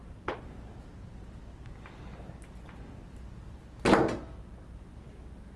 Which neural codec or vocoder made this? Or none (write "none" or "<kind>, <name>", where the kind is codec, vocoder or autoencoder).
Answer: none